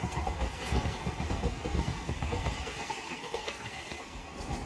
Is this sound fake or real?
fake